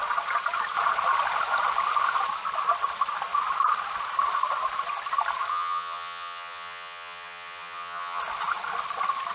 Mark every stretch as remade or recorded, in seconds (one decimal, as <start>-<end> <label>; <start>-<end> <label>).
0.0-5.5 recorded; 5.5-8.2 remade; 8.2-9.3 recorded

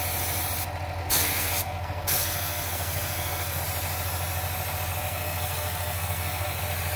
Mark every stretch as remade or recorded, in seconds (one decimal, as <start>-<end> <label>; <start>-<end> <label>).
0.0-1.0 recorded; 1.0-3.6 remade; 3.6-5.0 recorded; 5.0-6.6 remade; 6.6-7.0 recorded